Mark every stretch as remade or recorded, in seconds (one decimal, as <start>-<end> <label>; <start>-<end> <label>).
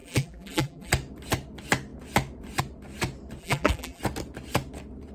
0.0-0.9 remade; 0.9-3.4 recorded; 3.4-4.0 remade; 4.0-5.1 recorded